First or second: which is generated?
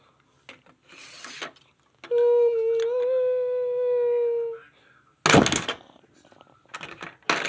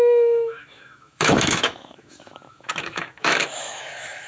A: second